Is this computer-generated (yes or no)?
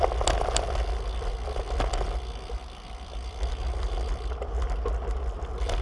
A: no